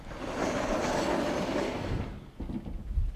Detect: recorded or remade recorded